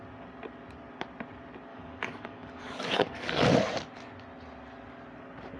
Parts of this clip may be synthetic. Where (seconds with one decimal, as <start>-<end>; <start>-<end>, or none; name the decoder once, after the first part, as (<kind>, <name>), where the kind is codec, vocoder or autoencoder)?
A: 1.7-3.5 (codec, DAC)